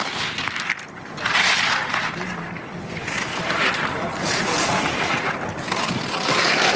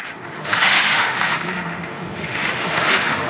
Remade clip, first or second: second